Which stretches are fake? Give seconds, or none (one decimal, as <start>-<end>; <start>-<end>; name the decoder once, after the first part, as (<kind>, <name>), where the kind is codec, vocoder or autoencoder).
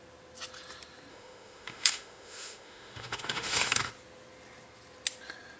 1.1-3.9 (autoencoder, DAC-VAE)